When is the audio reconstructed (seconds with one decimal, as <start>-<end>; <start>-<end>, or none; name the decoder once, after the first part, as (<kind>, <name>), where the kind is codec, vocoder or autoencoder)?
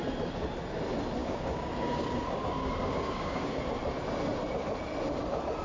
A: 1.2-3.6 (codec, DAC)